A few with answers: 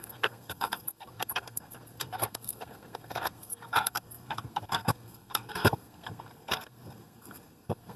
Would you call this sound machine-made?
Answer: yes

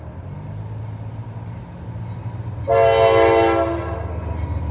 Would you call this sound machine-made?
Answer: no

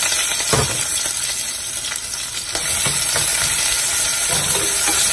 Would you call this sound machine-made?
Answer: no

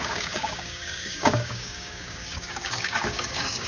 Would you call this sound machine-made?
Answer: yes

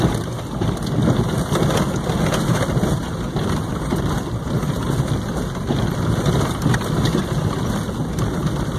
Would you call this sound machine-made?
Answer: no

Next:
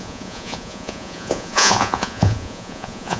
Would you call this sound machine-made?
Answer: yes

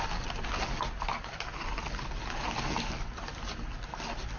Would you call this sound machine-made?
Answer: no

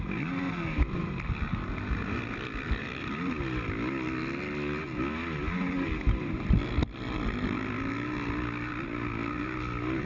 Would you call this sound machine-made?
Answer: no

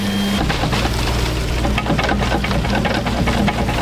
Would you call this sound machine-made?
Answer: no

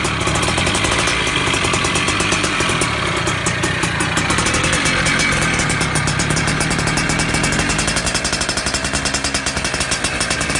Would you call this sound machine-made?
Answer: no